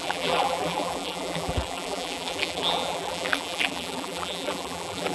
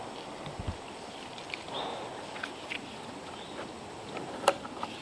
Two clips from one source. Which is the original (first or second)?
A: second